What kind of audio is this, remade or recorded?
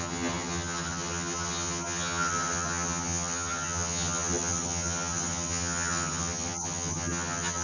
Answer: remade